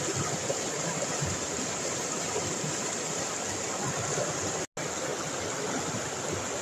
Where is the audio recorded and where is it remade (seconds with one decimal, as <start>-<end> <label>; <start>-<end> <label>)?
0.0-0.4 recorded; 0.4-3.3 remade; 3.3-6.6 recorded